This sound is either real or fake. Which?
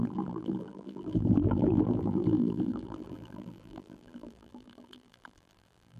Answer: fake